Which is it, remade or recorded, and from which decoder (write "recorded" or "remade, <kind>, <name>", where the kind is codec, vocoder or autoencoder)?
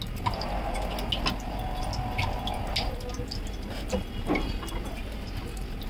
recorded